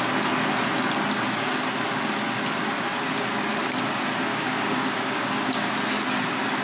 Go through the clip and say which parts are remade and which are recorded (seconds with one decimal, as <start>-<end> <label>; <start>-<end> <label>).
0.0-4.3 recorded; 4.3-5.7 remade; 5.7-6.6 recorded